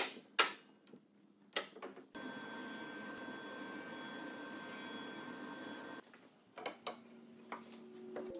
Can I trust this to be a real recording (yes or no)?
yes